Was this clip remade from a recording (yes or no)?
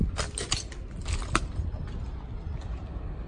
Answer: no